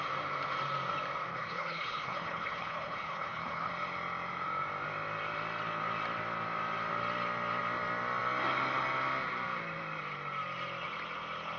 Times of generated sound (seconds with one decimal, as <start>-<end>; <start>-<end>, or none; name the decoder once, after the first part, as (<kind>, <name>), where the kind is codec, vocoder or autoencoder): 1.3-3.7 (codec, HILCodec)